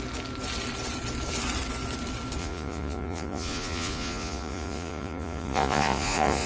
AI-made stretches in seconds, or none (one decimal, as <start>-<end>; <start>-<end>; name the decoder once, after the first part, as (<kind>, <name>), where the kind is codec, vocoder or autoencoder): 2.4-6.5 (vocoder, Vocos)